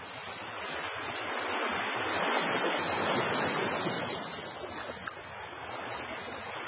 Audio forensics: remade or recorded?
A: recorded